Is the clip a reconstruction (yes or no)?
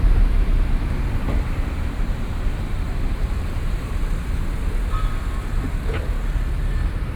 yes